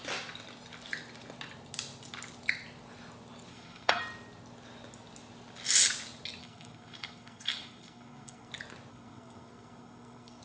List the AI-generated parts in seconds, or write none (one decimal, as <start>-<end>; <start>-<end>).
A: 3.5-4.0; 6.4-8.5; 8.9-10.4